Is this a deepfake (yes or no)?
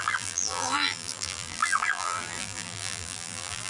yes